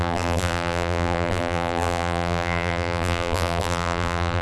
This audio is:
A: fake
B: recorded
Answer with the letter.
A